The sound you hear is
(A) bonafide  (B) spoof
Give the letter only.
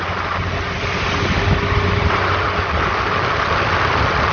A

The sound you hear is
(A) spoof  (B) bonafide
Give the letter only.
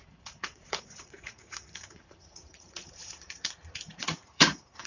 A